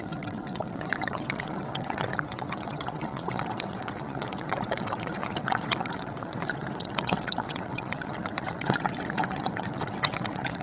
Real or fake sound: fake